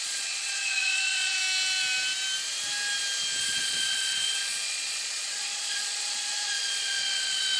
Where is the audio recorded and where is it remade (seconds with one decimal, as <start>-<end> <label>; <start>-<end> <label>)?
0.0-1.4 remade; 1.4-3.4 recorded; 3.4-7.6 remade